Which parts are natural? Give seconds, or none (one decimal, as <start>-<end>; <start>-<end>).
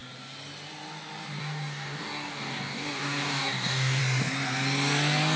0.0-1.4; 4.0-5.4